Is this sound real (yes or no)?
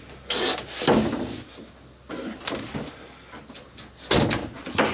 yes